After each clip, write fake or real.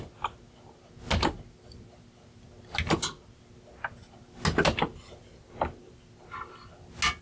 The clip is real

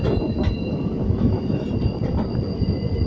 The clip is real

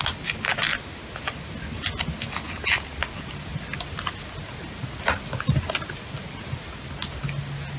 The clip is real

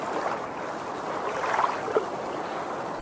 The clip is real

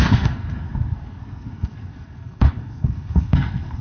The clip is fake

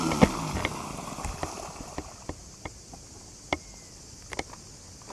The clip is real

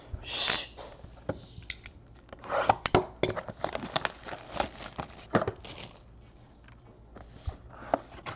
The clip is real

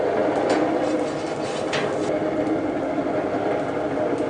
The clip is real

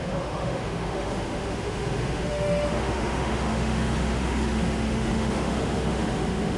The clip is fake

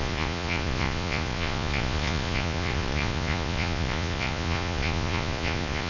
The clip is fake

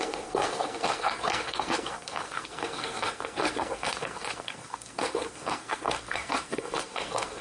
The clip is fake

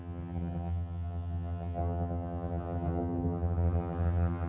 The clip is fake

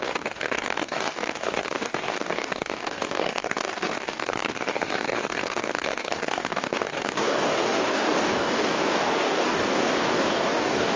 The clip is fake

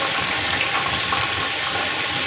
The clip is fake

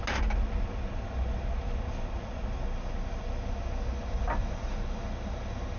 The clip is real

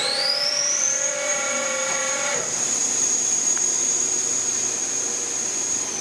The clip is fake